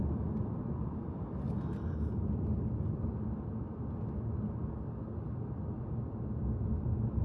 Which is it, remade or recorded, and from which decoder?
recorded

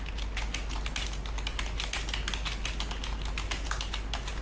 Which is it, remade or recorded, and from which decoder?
recorded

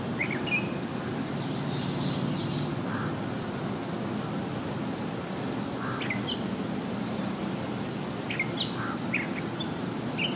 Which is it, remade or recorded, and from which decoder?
recorded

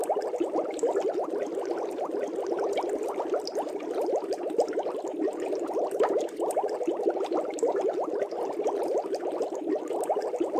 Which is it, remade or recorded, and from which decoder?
recorded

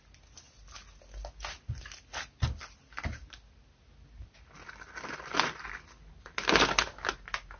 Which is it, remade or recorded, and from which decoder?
recorded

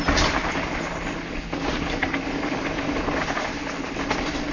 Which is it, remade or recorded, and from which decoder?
recorded